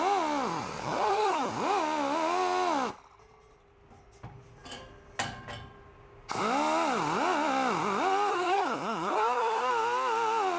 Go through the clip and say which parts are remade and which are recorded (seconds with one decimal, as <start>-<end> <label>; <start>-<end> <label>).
0.0-0.8 recorded; 0.8-1.5 remade; 1.5-8.3 recorded; 8.3-9.7 remade; 9.7-10.6 recorded